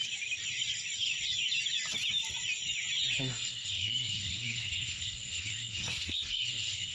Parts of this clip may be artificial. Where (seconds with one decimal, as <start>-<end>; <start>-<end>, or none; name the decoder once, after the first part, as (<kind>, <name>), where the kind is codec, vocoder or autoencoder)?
3.2-6.9 (codec, SNAC)